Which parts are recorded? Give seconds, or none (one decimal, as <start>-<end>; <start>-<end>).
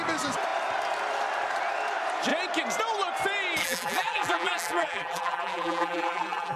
0.0-3.6